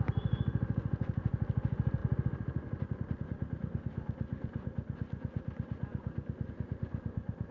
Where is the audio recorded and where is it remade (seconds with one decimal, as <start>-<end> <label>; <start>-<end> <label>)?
0.0-7.5 recorded